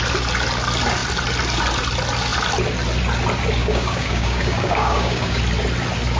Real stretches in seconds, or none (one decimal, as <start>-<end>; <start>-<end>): 0.0-3.6; 5.4-6.2